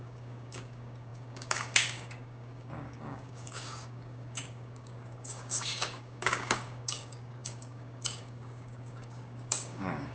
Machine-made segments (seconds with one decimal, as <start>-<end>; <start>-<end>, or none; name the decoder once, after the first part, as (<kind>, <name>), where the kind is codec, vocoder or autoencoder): 0.0-10.1 (codec, DAC)